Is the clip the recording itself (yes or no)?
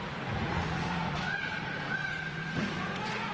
no